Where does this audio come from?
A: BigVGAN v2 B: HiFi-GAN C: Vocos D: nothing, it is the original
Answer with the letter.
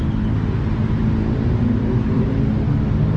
D